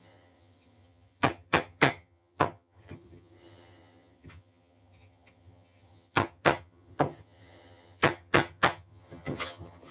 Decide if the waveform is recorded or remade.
remade